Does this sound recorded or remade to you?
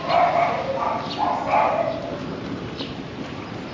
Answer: recorded